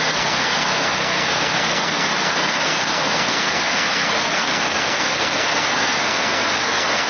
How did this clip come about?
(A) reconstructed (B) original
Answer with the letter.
A